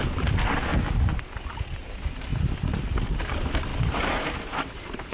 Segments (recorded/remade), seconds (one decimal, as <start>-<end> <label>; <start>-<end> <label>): 0.0-0.7 remade; 0.7-1.5 recorded; 1.5-2.3 remade; 2.3-3.2 recorded; 3.2-5.1 remade